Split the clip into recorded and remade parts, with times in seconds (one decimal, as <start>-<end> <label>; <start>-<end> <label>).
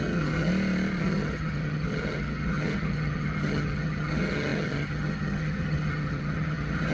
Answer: 0.0-0.5 remade; 0.5-1.0 recorded; 1.0-6.9 remade